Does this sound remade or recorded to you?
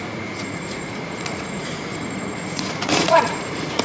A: remade